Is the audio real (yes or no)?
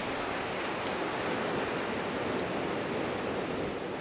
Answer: yes